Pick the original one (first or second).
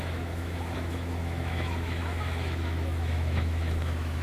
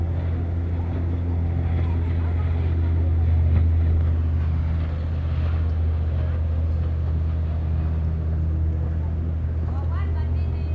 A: second